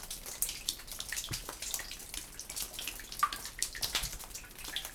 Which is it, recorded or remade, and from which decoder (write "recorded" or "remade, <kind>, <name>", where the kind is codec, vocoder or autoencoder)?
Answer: recorded